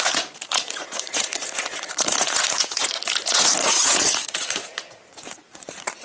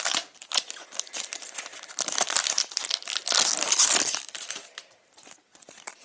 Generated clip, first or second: first